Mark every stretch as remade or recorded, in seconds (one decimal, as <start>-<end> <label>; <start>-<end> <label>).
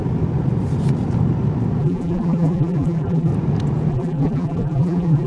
0.0-1.8 recorded; 1.8-3.3 remade; 3.3-3.9 recorded; 3.9-5.3 remade